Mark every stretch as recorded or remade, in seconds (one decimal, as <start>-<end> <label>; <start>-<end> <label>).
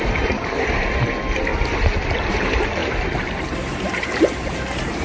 0.0-1.5 remade; 1.5-2.3 recorded; 2.3-2.8 remade; 2.8-3.4 recorded; 3.4-5.0 remade